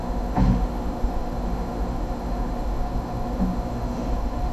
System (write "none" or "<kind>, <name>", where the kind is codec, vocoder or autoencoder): autoencoder, DAC-VAE